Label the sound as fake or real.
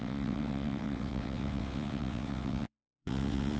fake